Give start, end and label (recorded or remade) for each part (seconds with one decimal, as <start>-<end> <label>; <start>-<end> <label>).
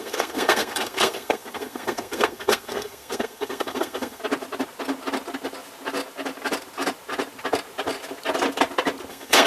0.0-4.2 remade; 4.2-9.1 recorded; 9.1-9.5 remade